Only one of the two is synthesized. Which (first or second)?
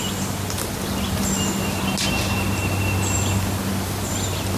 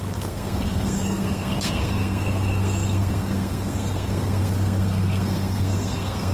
second